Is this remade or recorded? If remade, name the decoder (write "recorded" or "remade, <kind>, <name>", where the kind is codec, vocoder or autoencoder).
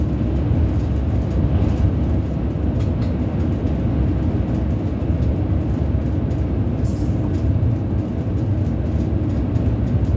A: recorded